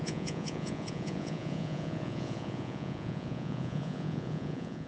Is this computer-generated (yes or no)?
yes